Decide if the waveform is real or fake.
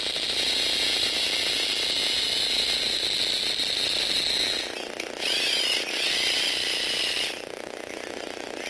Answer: real